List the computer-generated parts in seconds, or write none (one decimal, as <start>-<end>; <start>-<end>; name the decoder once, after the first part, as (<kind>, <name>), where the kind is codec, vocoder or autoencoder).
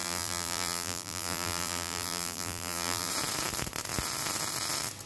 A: 0.0-3.1 (vocoder, BigVGAN v2)